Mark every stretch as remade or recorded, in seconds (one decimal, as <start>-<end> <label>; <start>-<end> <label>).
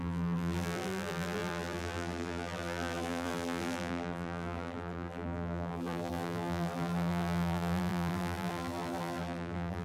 0.0-9.8 remade